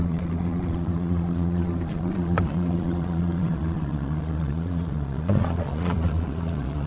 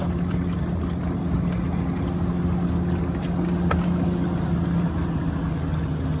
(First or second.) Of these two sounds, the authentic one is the second